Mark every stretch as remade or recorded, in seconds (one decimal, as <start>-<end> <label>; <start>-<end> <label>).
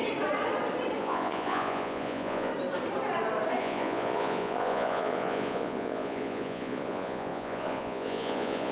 0.0-1.0 recorded; 1.0-2.5 remade; 2.5-3.6 recorded; 3.6-8.7 remade